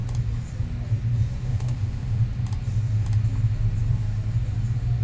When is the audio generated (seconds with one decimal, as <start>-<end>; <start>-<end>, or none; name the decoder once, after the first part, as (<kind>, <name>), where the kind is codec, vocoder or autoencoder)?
1.5-2.2 (autoencoder, DAC-VAE)